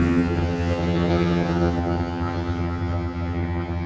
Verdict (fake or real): fake